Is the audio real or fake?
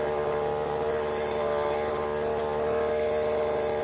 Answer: real